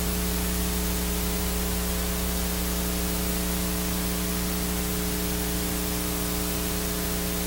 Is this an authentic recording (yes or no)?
yes